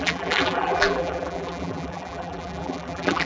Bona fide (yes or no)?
no